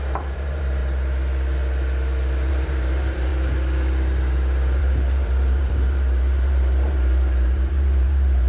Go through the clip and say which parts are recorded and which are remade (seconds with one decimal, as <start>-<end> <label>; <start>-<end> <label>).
0.0-0.8 remade; 0.8-2.5 recorded; 2.5-3.3 remade; 3.3-4.8 recorded; 4.8-8.5 remade